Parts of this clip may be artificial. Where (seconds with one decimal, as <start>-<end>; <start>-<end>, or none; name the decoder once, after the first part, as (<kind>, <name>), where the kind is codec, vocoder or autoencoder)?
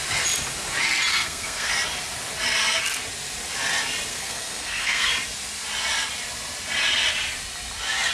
1.1-1.7 (codec, SNAC); 4.1-5.1